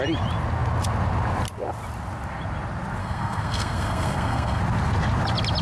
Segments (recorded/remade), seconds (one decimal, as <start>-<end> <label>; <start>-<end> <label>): 0.0-3.0 recorded; 3.0-4.6 remade; 4.6-5.6 recorded